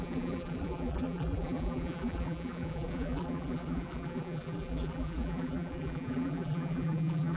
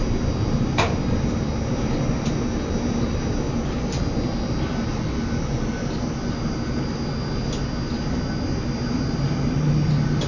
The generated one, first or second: first